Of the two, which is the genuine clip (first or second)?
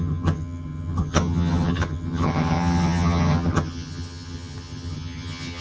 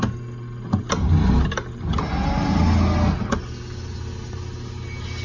second